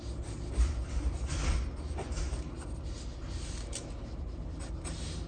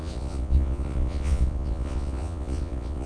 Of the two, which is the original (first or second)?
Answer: first